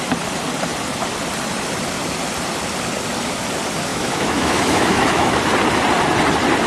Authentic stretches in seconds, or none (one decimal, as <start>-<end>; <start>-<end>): 0.0-3.9; 5.4-6.7